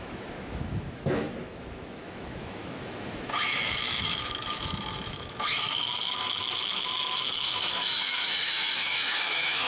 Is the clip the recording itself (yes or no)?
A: no